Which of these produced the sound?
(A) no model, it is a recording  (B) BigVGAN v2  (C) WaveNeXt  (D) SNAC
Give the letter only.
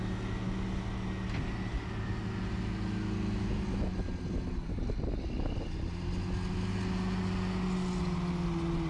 A